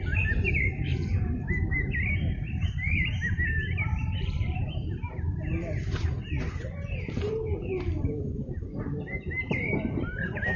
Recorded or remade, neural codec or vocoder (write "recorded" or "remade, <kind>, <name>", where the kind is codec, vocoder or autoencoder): remade, vocoder, BigVGAN v2